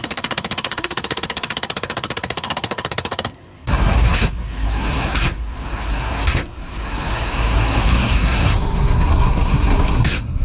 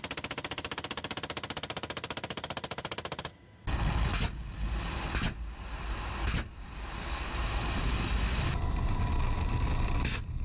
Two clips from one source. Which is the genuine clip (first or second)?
second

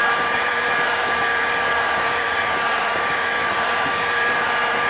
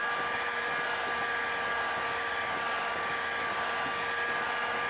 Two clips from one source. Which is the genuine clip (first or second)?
second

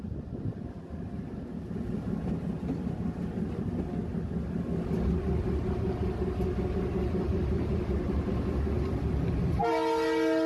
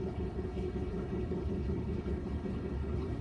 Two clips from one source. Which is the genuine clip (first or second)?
first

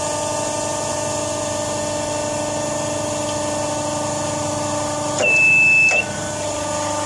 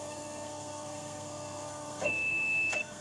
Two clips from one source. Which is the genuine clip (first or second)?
first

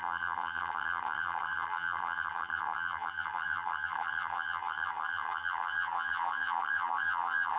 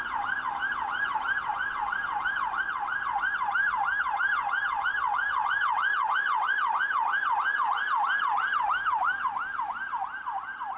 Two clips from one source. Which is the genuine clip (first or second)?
second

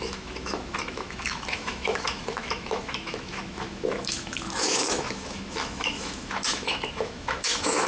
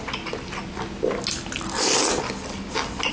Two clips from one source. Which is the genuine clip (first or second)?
second